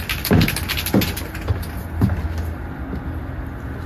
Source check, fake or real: real